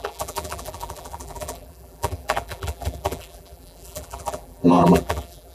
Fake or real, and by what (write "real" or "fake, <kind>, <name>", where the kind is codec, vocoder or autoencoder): fake, vocoder, BigVGAN v2